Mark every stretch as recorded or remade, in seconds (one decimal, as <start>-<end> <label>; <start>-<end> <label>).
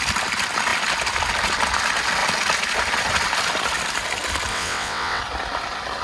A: 0.0-4.5 recorded; 4.5-5.2 remade; 5.2-6.0 recorded